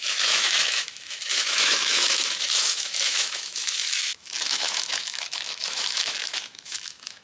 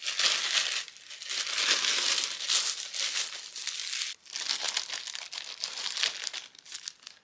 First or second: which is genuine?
second